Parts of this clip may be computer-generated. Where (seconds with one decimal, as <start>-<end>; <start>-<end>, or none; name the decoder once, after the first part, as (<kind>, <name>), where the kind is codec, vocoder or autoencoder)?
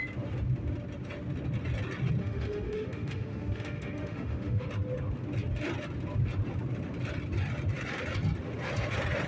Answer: 2.2-4.7 (autoencoder, DAC-VAE)